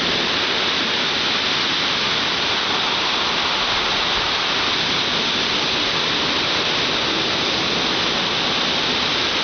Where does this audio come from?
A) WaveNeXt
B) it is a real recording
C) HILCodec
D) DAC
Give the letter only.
B